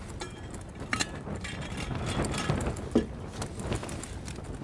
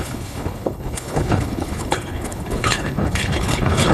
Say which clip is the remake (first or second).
second